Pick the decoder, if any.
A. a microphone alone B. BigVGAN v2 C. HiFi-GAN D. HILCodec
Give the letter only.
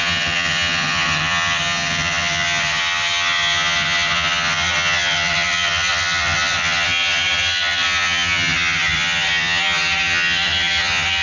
C